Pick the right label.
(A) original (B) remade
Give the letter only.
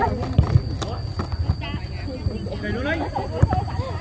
A